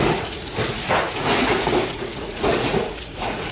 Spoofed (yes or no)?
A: yes